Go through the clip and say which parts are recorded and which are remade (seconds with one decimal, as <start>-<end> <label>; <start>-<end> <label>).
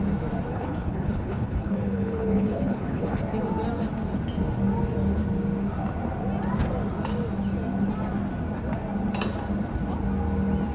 0.0-0.5 recorded; 0.5-3.2 remade; 3.2-10.7 recorded